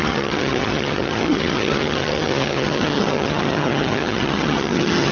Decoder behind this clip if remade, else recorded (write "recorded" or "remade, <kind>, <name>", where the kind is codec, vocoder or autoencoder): remade, vocoder, HiFi-GAN